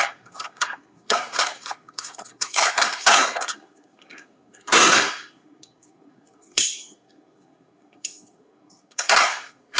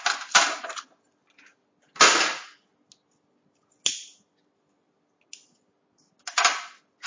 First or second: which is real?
second